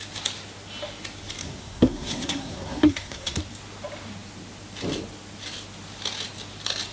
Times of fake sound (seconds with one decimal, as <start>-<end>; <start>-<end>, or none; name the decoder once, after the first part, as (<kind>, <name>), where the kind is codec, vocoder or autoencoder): 1.4-3.4 (codec, SNAC)